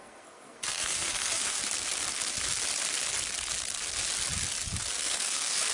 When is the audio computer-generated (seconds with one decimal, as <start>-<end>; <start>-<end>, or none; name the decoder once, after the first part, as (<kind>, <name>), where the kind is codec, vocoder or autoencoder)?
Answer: 0.0-1.6 (codec, SNAC); 4.9-5.7